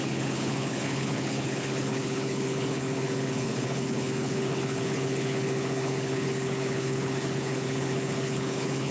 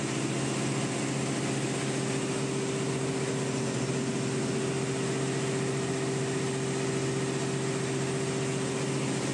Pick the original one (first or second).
second